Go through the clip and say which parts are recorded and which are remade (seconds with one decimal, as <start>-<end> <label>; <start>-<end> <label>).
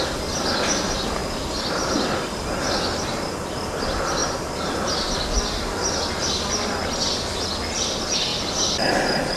0.0-4.2 recorded; 4.2-4.8 remade; 4.8-9.4 recorded